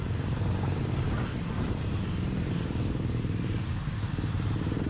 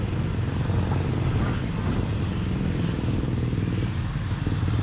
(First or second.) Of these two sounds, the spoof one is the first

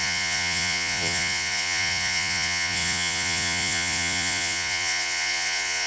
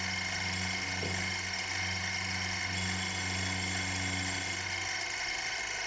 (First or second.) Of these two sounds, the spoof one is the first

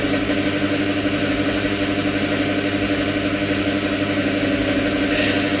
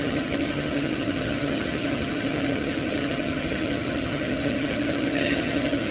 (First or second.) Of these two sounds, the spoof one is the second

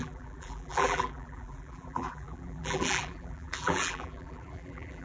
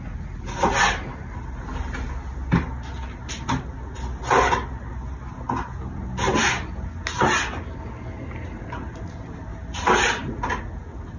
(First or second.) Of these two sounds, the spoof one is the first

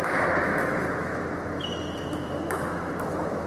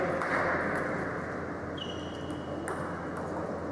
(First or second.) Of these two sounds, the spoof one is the first